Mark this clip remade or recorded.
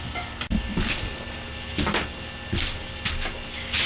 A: recorded